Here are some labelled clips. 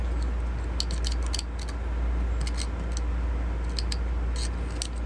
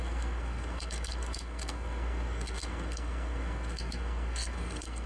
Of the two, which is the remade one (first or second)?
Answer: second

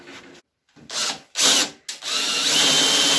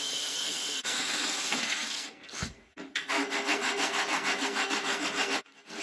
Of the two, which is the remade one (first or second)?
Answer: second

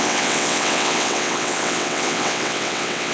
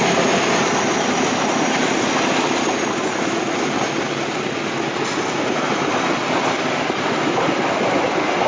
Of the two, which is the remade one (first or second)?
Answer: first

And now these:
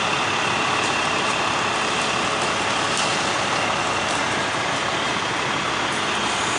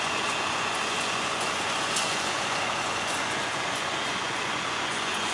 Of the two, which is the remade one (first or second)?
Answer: second